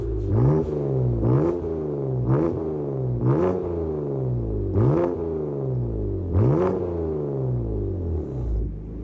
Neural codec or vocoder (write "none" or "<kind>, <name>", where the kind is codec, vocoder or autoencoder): none